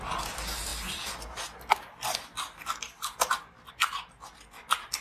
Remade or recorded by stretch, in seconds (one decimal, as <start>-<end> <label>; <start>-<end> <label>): 0.0-5.0 recorded